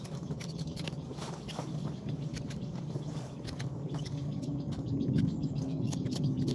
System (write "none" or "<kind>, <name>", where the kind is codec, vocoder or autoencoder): codec, DAC